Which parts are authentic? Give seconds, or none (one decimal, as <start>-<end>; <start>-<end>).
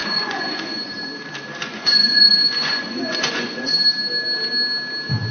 1.1-1.6; 3.7-5.3